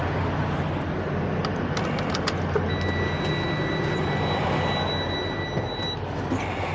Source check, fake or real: real